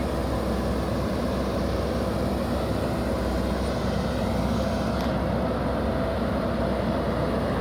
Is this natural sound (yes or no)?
yes